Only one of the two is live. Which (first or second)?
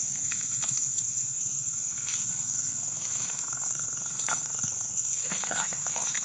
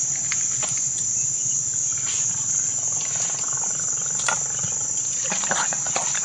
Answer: second